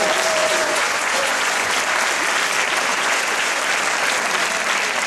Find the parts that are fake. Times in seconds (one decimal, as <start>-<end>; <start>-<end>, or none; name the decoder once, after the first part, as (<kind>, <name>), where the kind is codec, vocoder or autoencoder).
0.4-1.7 (vocoder, Vocos); 2.9-3.6